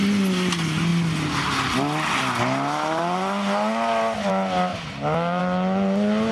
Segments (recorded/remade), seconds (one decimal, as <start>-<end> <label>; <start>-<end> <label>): 0.0-6.3 recorded